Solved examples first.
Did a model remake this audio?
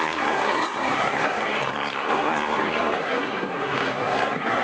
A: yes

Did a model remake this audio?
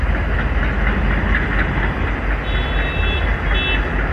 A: no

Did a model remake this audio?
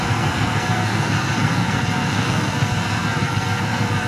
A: yes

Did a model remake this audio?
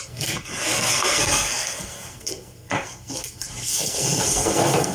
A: yes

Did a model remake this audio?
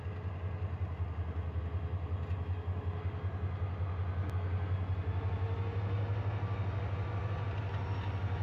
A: no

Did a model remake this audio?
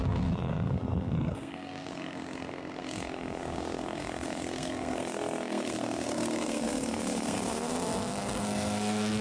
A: yes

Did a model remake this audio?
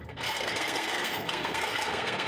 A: yes